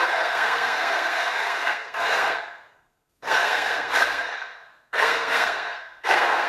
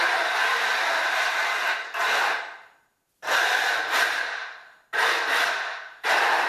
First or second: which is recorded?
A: second